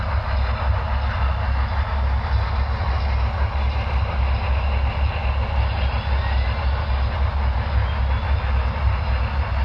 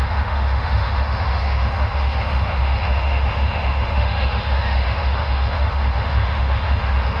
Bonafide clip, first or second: first